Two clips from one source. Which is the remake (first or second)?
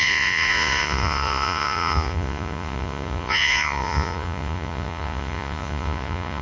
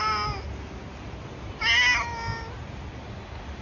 first